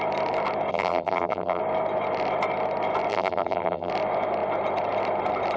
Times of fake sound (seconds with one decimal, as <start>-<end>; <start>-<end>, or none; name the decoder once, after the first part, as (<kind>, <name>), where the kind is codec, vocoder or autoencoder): 0.7-1.6 (vocoder, BigVGAN v2); 3.1-3.9